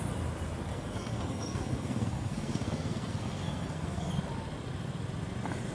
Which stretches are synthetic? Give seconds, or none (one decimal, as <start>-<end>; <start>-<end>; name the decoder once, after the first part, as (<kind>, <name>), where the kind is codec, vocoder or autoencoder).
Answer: 0.7-4.1 (codec, SNAC)